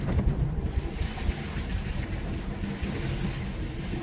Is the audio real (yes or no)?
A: yes